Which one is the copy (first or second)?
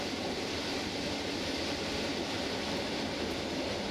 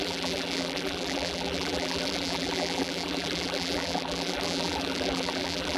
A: second